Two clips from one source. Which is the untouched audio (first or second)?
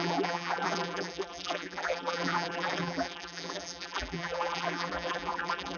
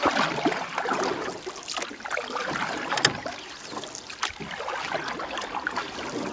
second